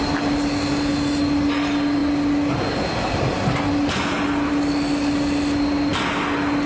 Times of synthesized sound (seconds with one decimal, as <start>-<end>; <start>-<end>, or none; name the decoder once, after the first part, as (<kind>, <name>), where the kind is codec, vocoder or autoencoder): none